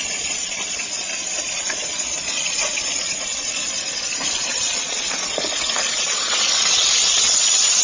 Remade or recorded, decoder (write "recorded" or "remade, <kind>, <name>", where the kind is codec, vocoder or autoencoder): remade, vocoder, Vocos